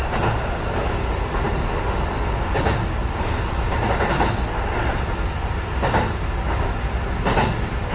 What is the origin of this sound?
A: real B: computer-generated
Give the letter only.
A